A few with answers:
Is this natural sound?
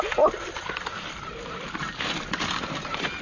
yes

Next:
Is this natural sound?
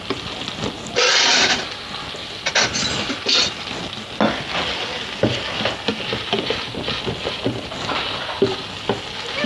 yes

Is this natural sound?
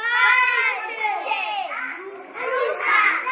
yes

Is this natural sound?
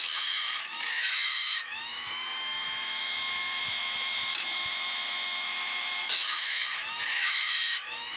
no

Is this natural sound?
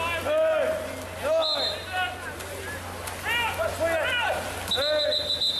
yes